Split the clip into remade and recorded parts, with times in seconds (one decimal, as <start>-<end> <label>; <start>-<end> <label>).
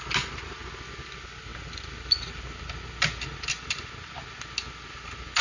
0.0-5.4 recorded